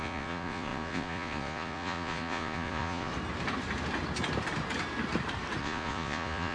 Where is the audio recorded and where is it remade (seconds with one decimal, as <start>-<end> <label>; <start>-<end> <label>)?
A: 0.0-3.1 remade; 3.1-5.6 recorded; 5.6-6.5 remade